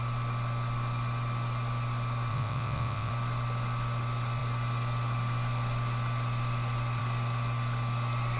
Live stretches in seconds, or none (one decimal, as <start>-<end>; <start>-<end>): 0.0-2.3; 3.1-8.4